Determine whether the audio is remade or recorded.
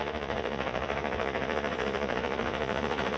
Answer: remade